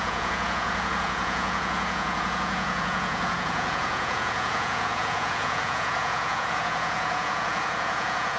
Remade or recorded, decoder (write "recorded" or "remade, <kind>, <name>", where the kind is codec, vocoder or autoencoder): remade, vocoder, Vocos